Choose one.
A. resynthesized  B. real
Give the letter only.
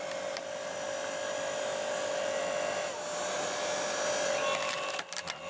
B